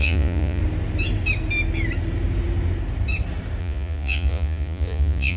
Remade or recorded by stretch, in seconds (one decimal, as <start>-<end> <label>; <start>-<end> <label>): 0.0-0.6 remade; 0.6-3.6 recorded; 3.6-5.4 remade